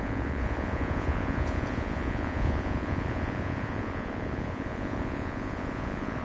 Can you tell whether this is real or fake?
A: fake